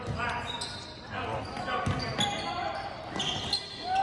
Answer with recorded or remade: recorded